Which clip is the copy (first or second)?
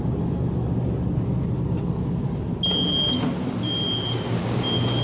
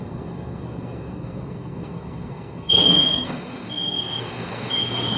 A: second